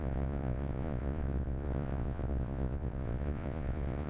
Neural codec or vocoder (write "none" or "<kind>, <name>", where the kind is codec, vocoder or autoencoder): vocoder, Vocos